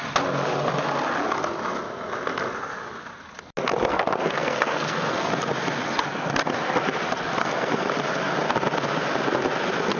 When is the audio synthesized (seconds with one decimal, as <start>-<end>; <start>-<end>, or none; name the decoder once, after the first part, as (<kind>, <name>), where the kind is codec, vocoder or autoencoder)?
3.9-5.3 (codec, SNAC); 7.4-7.9